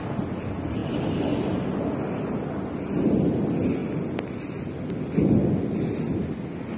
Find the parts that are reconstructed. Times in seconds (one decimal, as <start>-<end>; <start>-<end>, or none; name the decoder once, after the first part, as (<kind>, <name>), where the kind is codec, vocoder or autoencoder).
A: none